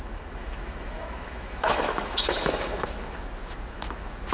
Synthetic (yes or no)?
yes